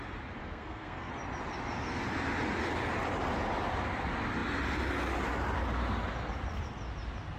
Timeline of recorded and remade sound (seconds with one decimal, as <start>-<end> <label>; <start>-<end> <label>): 0.0-0.4 recorded; 0.4-1.1 remade; 1.1-7.4 recorded